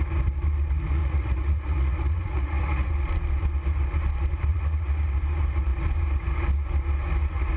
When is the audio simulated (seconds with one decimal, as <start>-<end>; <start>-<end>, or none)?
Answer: 1.0-2.9; 4.5-5.2